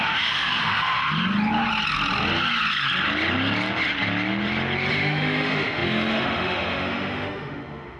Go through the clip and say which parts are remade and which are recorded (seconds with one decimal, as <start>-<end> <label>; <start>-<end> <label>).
0.0-1.0 remade; 1.0-4.9 recorded; 4.9-8.0 remade